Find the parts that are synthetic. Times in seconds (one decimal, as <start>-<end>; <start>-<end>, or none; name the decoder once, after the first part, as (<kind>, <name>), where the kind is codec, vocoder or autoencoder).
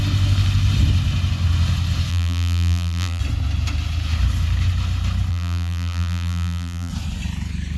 2.1-3.2 (vocoder, BigVGAN v2); 5.3-6.9